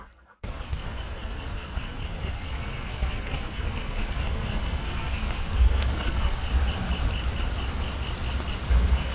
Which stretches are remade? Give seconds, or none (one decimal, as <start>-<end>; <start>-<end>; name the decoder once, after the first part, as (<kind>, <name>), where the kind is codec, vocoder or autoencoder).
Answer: 0.0-6.5 (codec, SNAC); 8.7-9.1